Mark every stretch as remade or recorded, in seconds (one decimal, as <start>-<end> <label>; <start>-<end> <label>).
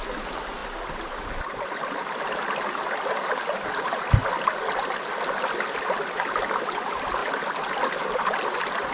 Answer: 0.0-8.9 recorded